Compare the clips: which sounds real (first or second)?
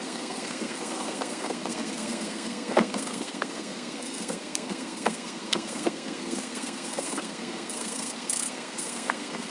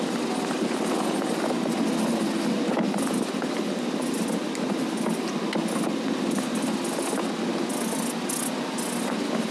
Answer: second